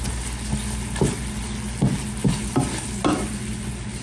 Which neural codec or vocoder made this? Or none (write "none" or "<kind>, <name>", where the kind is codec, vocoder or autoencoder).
none